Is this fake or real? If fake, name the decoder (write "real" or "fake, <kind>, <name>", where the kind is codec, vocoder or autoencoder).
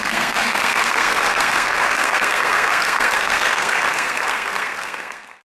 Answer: fake, codec, SNAC